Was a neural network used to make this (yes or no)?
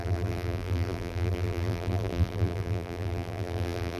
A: yes